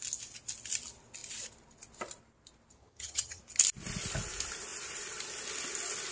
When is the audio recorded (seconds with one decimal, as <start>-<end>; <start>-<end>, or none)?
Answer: 0.0-2.7; 3.4-6.1